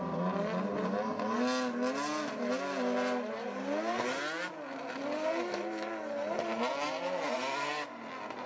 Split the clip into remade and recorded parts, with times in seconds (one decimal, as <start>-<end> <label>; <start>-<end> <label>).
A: 0.0-8.5 recorded